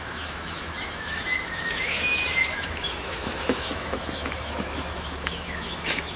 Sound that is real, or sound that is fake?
fake